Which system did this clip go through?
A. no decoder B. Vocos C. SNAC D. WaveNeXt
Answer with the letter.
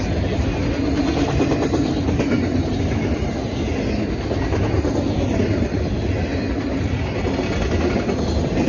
A